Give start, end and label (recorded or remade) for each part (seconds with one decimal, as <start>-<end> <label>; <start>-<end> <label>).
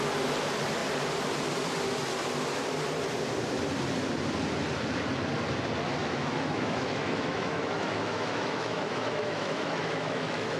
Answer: 0.0-6.0 recorded; 6.0-10.6 remade